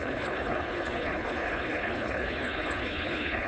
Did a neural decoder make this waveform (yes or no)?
yes